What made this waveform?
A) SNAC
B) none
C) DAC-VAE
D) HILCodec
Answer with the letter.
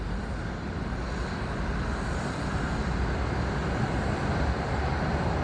B